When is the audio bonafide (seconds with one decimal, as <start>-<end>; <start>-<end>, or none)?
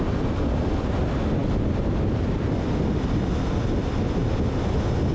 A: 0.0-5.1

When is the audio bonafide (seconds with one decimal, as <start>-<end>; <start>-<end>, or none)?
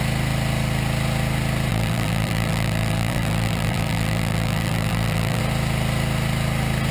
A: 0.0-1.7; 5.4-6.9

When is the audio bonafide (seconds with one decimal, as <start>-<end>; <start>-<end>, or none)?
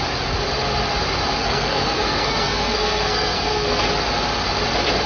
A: 0.0-1.4; 3.8-5.1